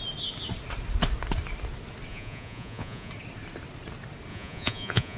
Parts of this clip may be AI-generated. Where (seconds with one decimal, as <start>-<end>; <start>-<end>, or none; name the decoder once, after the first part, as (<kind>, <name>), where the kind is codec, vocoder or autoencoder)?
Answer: 2.1-3.1 (vocoder, Vocos); 4.3-5.2